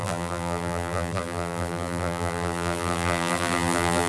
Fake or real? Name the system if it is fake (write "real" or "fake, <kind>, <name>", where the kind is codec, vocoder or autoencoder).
fake, vocoder, BigVGAN v2